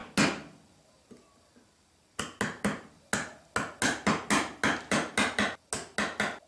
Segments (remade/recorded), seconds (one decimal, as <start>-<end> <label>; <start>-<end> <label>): 0.0-6.5 recorded